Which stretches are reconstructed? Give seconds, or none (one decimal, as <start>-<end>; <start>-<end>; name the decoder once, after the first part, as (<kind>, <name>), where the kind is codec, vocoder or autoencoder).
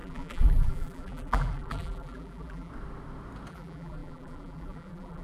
0.0-2.7 (vocoder, BigVGAN v2); 3.5-5.2